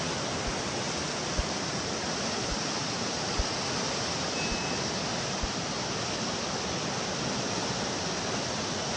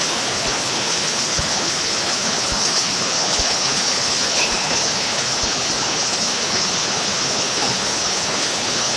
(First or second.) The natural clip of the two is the first